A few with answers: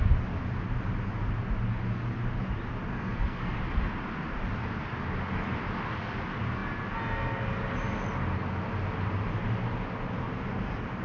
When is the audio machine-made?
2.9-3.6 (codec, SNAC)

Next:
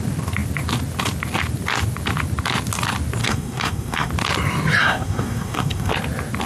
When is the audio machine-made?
3.2-4.1 (codec, SNAC); 4.8-5.9

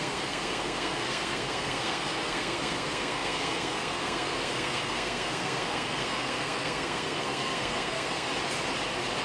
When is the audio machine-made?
0.0-8.3 (codec, SNAC)

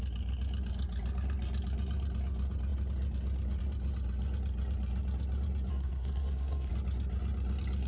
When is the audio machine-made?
5.7-6.7 (codec, SNAC)

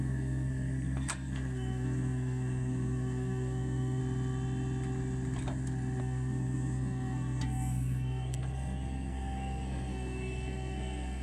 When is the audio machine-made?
0.0-4.0 (codec, SNAC); 6.0-11.2

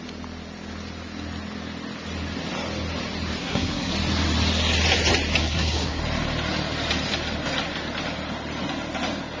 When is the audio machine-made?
3.4-3.9 (codec, SNAC); 5.4-6.0